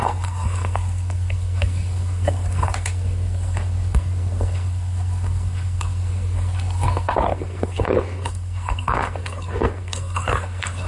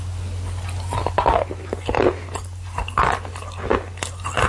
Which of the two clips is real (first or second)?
second